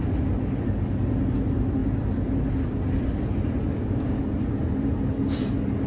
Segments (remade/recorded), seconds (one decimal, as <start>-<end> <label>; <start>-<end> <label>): 0.0-3.7 recorded; 3.7-4.2 remade; 4.2-5.9 recorded

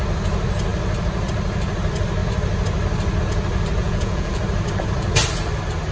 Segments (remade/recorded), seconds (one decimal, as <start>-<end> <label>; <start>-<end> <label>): 0.0-3.8 recorded; 3.8-4.4 remade; 4.4-5.9 recorded

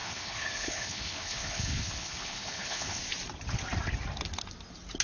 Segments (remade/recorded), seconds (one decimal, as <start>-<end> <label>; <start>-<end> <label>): 0.0-3.0 remade; 3.0-5.0 recorded

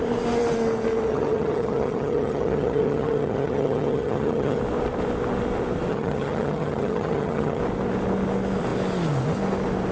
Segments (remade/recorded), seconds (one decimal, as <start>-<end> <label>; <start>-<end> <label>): 0.0-1.1 recorded; 1.1-4.6 remade; 4.6-5.9 recorded; 5.9-7.6 remade; 7.6-9.9 recorded

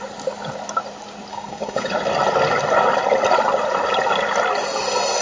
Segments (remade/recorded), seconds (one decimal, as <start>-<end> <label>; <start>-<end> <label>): 0.0-1.3 recorded; 1.3-1.9 remade; 1.9-5.2 recorded

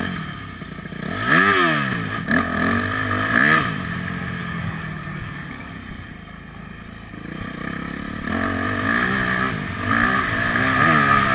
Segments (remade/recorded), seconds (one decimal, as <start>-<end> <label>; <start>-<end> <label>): 0.0-4.4 recorded; 4.4-5.7 remade; 5.7-11.3 recorded

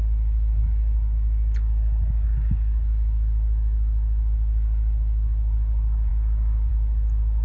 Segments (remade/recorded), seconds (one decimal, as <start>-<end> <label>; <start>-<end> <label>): 0.0-7.4 recorded

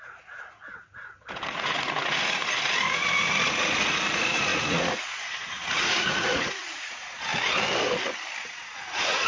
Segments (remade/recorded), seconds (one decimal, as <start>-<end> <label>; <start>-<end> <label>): 0.0-7.3 remade; 7.3-8.4 recorded; 8.4-9.3 remade